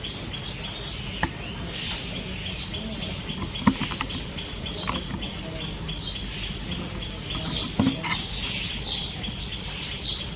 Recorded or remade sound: recorded